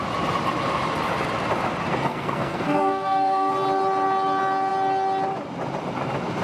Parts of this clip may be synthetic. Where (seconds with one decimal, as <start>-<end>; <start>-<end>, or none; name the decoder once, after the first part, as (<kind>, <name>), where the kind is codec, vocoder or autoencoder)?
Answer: 1.9-3.5 (codec, SNAC)